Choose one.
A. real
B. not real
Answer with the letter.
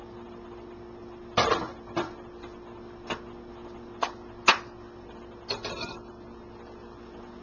A